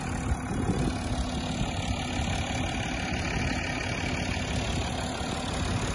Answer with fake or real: real